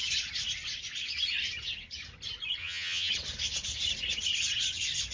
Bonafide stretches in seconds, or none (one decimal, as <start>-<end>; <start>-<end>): 0.0-2.6; 3.1-5.1